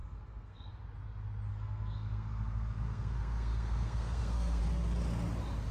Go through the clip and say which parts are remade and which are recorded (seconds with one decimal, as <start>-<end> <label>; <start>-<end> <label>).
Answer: 0.0-0.7 remade; 0.7-1.5 recorded; 1.5-4.6 remade; 4.6-5.7 recorded